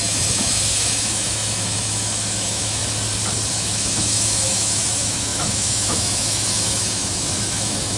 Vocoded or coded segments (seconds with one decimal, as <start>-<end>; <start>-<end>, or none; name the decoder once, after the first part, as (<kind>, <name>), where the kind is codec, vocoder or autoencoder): 0.0-2.8 (autoencoder, DAC-VAE); 3.5-8.0